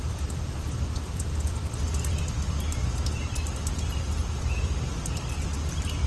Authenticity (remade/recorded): remade